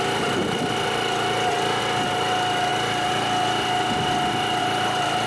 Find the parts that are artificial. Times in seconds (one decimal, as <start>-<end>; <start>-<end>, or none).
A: none